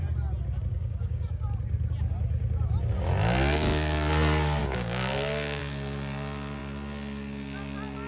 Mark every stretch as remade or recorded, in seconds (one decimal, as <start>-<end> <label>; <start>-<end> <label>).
0.0-0.7 recorded; 0.7-1.6 remade; 1.6-4.6 recorded; 4.6-5.6 remade; 5.6-8.1 recorded